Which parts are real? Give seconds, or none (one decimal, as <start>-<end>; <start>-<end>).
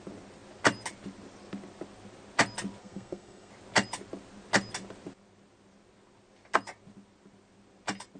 0.0-2.8; 3.5-8.2